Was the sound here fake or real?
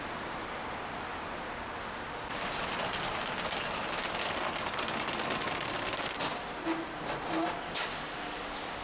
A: real